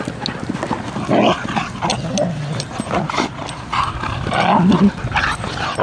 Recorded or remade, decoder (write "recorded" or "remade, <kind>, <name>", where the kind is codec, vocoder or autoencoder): recorded